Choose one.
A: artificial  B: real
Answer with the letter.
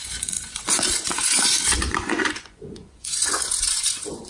A